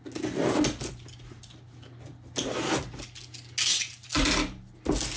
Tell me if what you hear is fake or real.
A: real